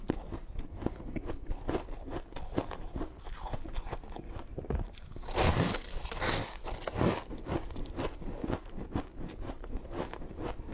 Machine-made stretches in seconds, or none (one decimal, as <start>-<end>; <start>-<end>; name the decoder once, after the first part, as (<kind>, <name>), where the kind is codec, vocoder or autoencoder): none